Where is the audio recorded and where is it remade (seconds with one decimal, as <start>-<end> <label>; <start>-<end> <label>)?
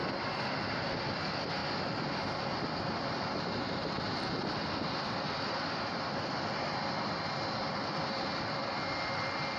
0.0-0.5 recorded; 0.5-1.6 remade; 1.6-4.5 recorded; 4.5-9.6 remade